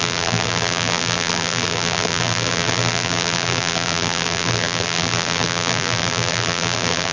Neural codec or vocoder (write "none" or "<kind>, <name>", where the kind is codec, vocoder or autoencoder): vocoder, BigVGAN v2